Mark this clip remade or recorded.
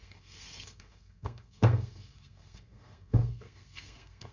remade